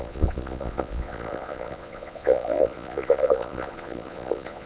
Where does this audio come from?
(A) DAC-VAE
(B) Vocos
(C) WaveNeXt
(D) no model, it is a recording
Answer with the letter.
B